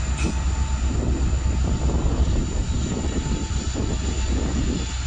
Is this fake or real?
real